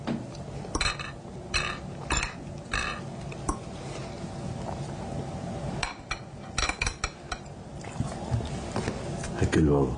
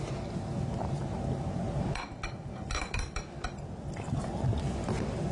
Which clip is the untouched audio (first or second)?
first